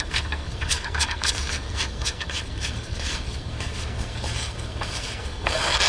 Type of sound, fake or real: fake